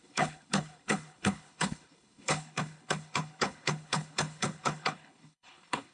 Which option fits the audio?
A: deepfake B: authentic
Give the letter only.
A